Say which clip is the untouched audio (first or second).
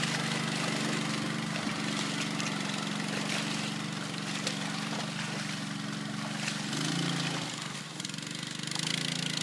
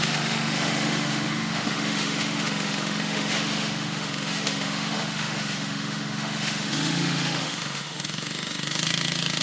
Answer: first